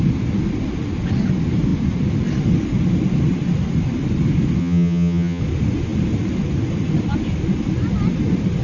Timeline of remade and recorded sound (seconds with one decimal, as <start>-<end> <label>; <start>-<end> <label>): 0.0-4.6 recorded; 4.6-5.4 remade; 5.4-8.6 recorded